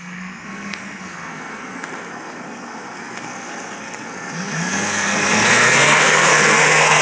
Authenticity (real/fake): fake